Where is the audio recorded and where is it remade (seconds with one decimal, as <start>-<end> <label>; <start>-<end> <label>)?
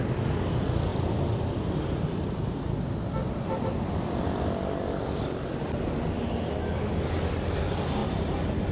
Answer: 0.0-0.9 recorded; 0.9-4.8 remade; 4.8-8.7 recorded